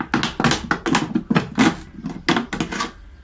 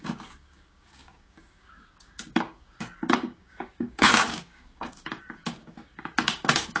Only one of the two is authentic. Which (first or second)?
first